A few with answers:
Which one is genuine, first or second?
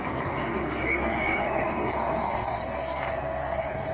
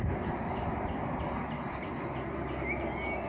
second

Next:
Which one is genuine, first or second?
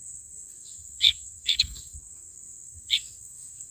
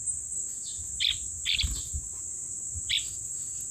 second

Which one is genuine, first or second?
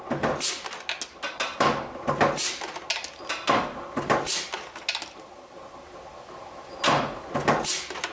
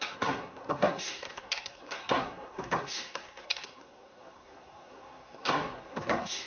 first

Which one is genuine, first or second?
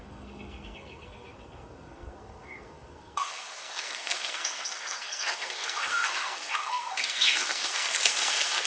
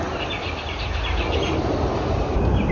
second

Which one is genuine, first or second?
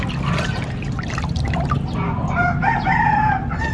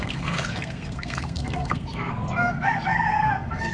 first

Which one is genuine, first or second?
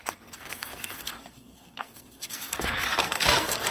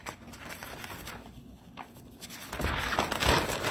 second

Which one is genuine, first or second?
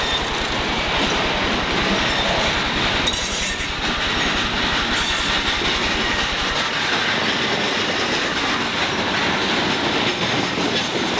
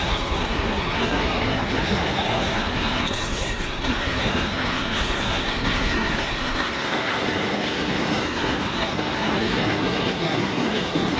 first